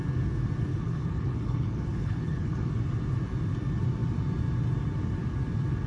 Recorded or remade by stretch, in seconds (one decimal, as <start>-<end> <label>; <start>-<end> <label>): 0.0-0.7 recorded; 0.7-2.7 remade; 2.7-5.9 recorded